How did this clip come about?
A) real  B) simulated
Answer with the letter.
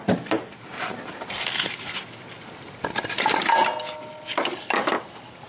A